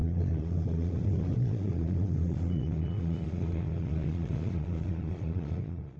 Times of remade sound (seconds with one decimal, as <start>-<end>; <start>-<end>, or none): 0.0-6.0